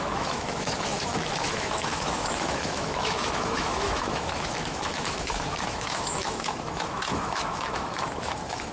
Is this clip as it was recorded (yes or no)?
no